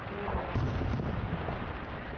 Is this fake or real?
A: fake